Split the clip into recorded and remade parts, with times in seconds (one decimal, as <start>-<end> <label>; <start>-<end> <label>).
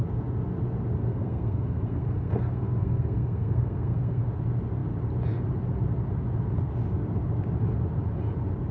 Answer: 0.0-1.1 recorded; 1.1-4.2 remade; 4.2-8.7 recorded